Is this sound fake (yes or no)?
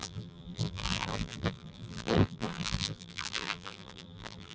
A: yes